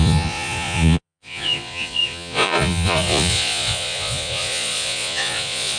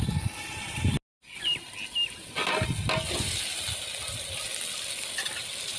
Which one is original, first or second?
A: second